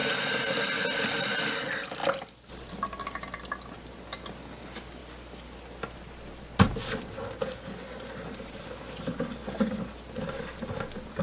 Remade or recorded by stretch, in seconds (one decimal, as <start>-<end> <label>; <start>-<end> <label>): 0.0-11.2 recorded